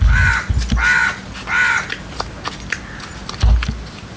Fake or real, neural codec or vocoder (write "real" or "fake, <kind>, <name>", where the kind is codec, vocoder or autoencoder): real